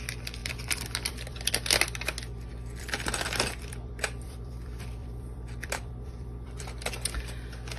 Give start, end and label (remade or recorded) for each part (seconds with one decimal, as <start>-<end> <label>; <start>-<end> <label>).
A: 0.0-0.4 recorded; 0.4-1.5 remade; 1.5-2.5 recorded; 2.5-6.9 remade; 6.9-7.8 recorded